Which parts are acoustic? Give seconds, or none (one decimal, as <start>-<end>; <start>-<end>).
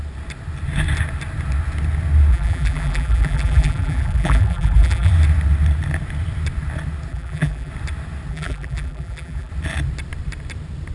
0.0-2.3; 5.1-7.1; 7.7-8.3; 9.5-10.9